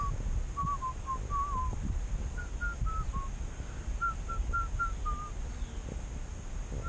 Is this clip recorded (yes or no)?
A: yes